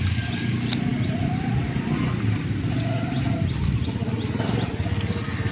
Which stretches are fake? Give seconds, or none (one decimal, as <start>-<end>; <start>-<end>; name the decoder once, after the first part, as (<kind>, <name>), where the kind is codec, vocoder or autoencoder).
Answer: none

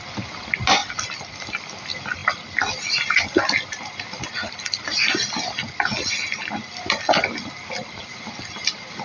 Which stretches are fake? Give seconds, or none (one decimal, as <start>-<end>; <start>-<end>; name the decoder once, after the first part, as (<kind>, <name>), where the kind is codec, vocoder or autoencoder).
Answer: none

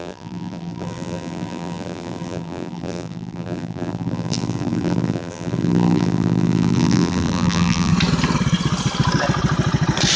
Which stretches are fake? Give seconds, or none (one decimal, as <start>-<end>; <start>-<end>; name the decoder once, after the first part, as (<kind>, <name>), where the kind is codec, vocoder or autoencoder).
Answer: 0.0-7.9 (vocoder, BigVGAN v2)